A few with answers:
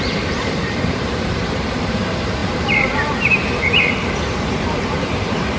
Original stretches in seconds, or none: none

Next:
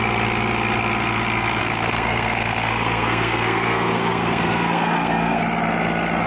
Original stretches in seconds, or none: 0.0-1.6; 5.4-6.3

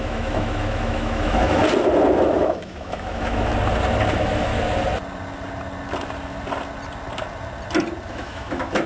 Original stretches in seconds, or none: 1.6-2.3; 3.5-4.1; 4.5-8.1

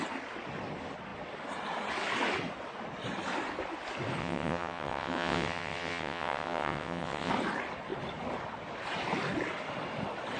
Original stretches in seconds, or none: 0.0-4.2; 7.3-10.4

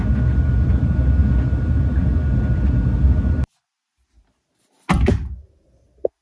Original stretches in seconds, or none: 0.0-6.2

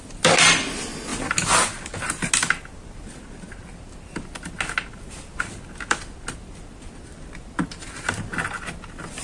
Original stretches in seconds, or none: 0.0-9.2